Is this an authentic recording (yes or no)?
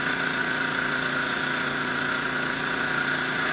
no